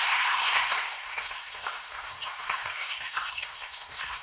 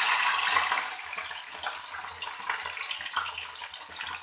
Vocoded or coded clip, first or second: first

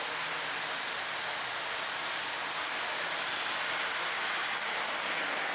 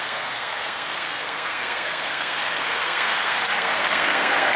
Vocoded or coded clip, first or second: second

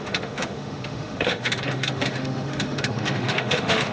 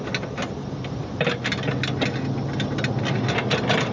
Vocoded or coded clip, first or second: first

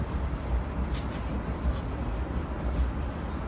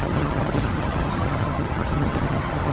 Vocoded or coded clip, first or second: second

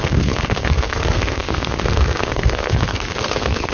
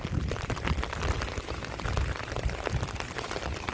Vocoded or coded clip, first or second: first